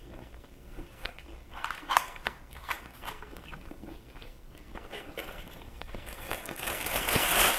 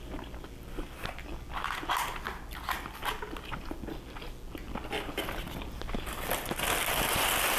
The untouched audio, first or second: second